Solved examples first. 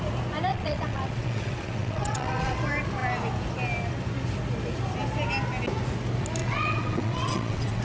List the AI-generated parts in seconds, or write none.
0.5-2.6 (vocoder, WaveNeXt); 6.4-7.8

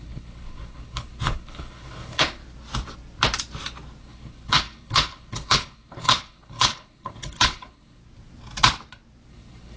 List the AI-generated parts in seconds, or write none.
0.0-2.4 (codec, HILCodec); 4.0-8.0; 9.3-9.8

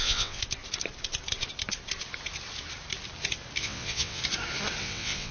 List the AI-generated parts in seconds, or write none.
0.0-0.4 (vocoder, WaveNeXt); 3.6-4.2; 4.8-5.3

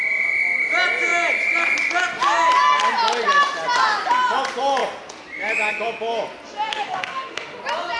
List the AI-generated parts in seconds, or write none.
6.7-7.6 (autoencoder, DAC-VAE)

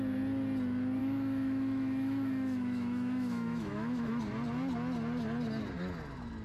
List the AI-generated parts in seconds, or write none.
1.0-4.2 (autoencoder, DAC-VAE)

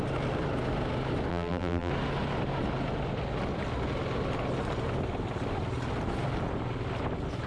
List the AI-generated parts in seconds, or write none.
1.3-1.9 (vocoder, BigVGAN v2)